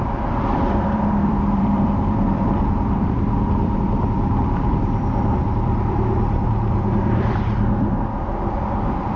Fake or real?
fake